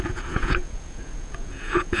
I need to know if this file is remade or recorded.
remade